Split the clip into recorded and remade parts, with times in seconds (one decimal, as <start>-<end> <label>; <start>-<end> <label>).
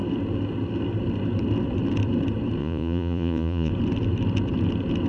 0.0-2.6 recorded; 2.6-3.7 remade; 3.7-5.1 recorded